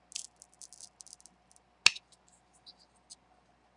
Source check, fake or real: real